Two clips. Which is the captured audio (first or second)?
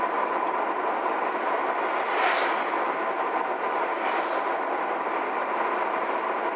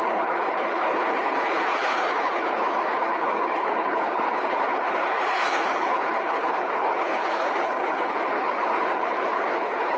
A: first